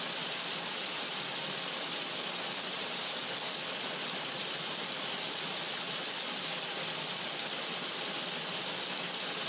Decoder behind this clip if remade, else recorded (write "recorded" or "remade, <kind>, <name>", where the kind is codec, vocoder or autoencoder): recorded